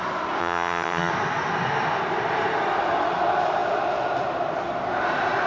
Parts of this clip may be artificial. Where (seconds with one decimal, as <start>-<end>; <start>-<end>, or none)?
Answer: 0.4-1.1